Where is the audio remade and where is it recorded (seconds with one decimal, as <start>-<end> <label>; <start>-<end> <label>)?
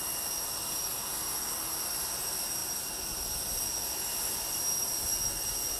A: 0.0-5.8 recorded